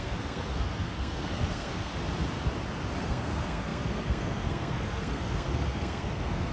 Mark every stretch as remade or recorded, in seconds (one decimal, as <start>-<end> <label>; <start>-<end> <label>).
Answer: 0.0-1.9 remade; 1.9-3.0 recorded; 3.0-6.5 remade